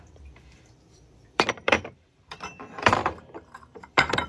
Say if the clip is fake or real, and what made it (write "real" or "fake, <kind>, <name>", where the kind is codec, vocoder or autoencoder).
fake, vocoder, BigVGAN v2